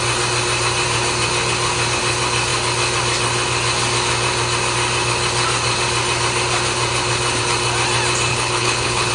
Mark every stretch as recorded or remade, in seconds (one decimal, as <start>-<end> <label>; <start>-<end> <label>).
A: 0.0-8.3 recorded; 8.3-9.1 remade